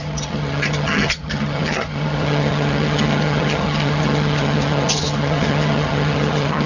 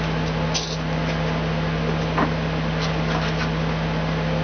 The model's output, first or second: first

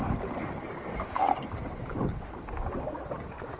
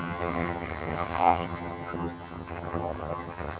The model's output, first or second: second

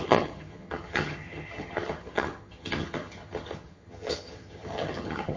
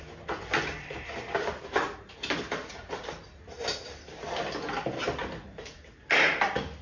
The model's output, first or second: first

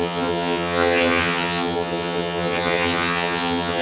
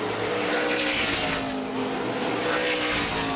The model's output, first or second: first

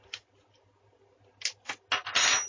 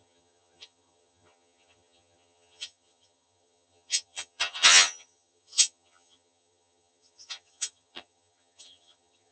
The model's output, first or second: second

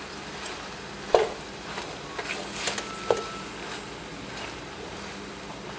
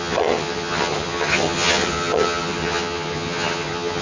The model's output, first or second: second